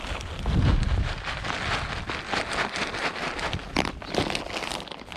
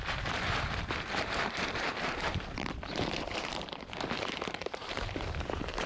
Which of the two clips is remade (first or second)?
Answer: second